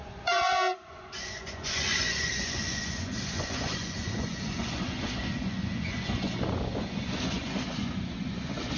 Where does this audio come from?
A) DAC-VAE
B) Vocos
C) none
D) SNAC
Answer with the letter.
B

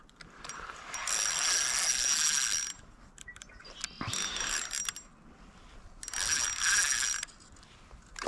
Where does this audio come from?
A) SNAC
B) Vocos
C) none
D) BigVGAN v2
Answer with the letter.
C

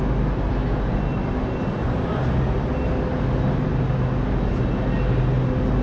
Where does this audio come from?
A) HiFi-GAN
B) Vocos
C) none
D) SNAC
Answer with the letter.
C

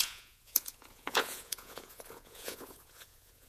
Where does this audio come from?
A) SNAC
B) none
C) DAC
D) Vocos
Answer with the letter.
D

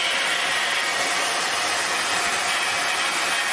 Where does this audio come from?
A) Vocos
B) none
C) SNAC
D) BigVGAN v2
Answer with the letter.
B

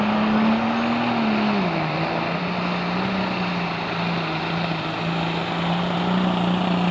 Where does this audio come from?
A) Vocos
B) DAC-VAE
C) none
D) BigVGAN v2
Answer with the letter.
C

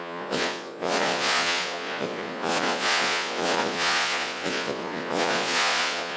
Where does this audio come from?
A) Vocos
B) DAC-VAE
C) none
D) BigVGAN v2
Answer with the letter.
A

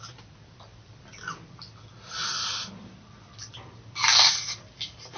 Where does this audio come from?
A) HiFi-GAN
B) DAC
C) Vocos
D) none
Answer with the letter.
D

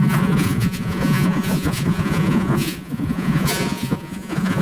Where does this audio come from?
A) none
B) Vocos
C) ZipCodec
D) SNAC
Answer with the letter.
B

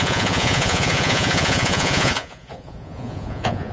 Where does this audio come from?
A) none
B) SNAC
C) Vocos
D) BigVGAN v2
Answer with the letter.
C